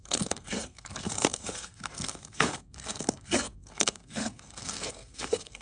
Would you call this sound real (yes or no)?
no